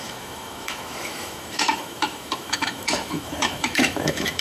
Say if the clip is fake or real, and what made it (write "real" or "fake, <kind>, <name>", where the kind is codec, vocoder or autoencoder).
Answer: fake, autoencoder, DAC-VAE